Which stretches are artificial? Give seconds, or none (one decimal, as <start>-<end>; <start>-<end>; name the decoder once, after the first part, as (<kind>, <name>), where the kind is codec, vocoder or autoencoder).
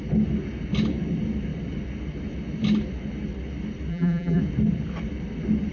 3.9-4.4 (vocoder, BigVGAN v2)